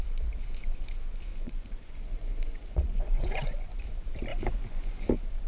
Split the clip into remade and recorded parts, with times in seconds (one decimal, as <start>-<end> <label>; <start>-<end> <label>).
0.0-1.3 recorded; 1.3-3.8 remade; 3.8-4.3 recorded; 4.3-5.1 remade; 5.1-5.5 recorded